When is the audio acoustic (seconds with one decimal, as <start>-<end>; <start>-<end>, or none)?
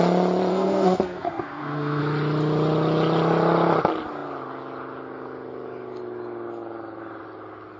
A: 0.0-0.5; 2.0-7.8